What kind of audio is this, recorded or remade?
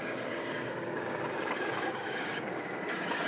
remade